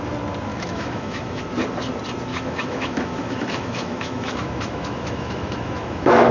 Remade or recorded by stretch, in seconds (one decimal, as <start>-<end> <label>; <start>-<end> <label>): 0.0-0.5 recorded; 0.5-1.4 remade; 1.4-2.3 recorded; 2.3-6.3 remade